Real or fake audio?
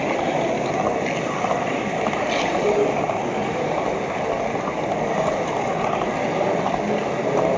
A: real